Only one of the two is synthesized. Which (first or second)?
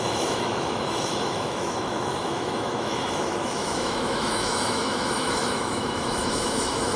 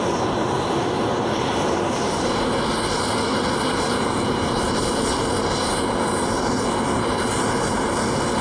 first